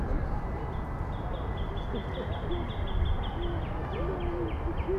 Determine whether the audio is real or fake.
real